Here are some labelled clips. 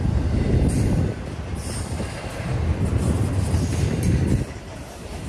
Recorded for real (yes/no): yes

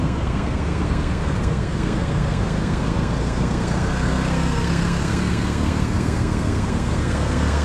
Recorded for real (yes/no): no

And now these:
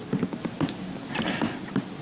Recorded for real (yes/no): yes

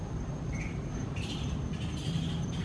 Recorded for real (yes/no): yes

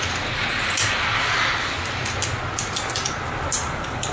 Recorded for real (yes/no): yes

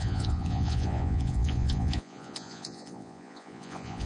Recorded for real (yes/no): no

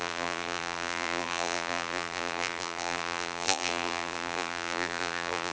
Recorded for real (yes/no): no